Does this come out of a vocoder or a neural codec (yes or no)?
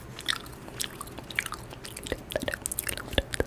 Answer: no